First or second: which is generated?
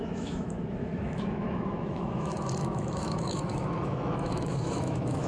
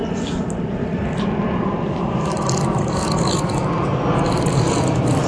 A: first